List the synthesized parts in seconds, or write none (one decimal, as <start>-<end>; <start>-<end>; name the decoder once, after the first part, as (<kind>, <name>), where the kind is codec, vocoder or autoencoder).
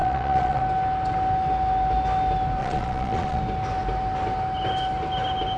0.0-0.6 (vocoder, Vocos); 2.6-3.4